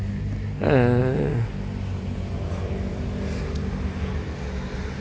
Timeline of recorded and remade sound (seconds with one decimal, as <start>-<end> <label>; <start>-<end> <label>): 0.0-5.0 recorded